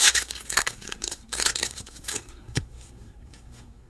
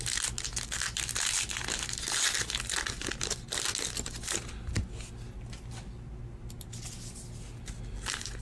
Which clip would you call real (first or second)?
second